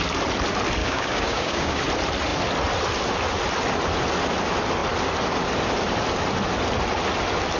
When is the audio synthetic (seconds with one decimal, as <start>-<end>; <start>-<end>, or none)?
0.8-1.8